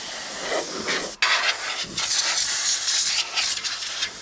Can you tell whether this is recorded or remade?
recorded